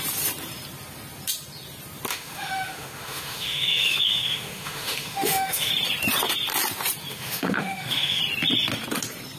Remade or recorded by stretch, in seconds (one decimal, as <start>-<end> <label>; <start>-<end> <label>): 0.0-2.1 recorded; 2.1-5.7 remade; 5.7-7.1 recorded; 7.1-8.2 remade; 8.2-9.4 recorded